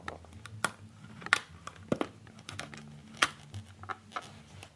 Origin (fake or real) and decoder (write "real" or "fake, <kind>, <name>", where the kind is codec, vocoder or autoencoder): real